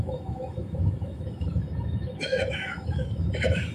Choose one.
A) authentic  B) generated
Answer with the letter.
B